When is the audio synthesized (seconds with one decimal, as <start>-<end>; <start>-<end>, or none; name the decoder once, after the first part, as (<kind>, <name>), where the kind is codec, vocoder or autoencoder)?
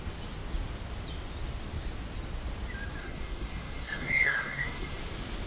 3.0-5.0 (codec, SNAC)